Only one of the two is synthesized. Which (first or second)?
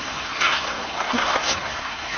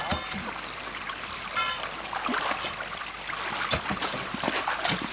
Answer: first